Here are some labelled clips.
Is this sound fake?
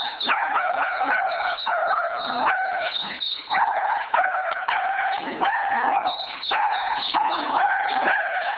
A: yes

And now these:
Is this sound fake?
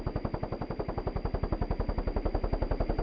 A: no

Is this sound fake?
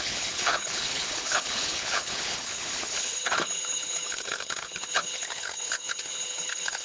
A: yes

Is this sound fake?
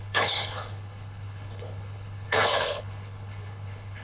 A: yes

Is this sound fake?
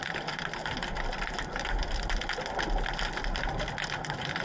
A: no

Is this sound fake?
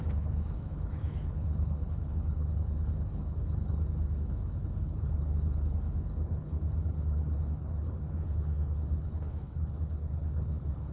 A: yes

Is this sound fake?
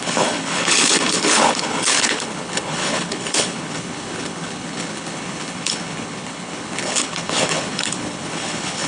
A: yes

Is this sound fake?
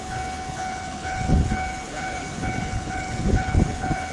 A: yes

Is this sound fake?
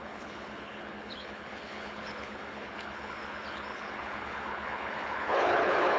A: yes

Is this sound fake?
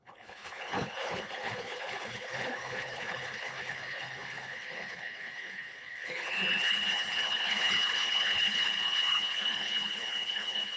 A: yes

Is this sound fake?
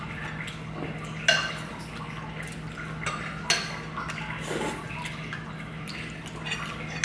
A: no